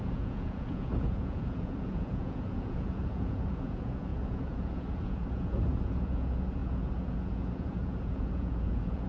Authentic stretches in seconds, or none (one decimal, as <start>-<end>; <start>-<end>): none